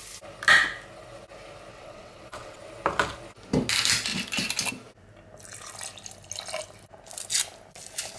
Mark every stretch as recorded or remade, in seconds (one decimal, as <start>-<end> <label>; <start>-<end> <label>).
0.0-1.7 recorded; 1.7-2.6 remade; 2.6-8.2 recorded